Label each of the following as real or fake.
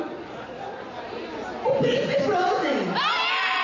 real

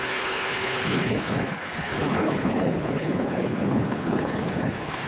fake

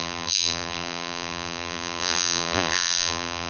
fake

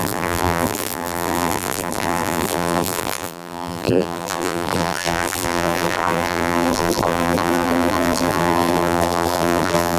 fake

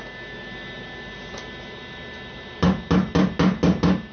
real